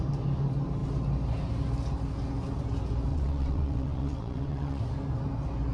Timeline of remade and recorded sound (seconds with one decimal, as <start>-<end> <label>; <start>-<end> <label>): 0.0-3.1 recorded; 3.1-4.8 remade; 4.8-5.7 recorded